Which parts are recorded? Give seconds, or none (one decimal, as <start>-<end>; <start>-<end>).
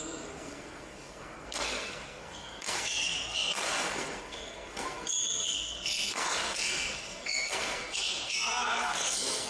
none